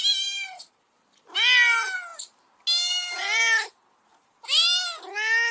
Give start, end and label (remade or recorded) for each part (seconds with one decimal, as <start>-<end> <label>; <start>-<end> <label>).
0.0-5.5 recorded